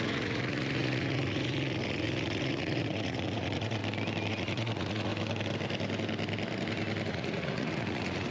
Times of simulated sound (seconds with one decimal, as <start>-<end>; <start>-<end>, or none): 0.0-3.8; 4.3-5.1; 7.1-8.3